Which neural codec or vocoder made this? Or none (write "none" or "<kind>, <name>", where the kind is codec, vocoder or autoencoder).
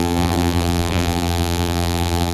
vocoder, BigVGAN v2